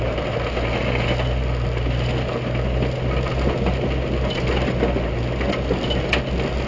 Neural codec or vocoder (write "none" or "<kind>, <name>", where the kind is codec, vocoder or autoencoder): none